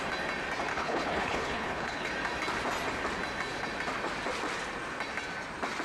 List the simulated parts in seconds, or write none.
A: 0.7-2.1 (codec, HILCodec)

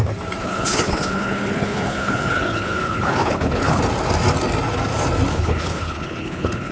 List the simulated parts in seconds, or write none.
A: 0.4-3.8 (codec, HILCodec); 5.3-6.7